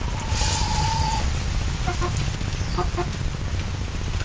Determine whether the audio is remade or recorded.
recorded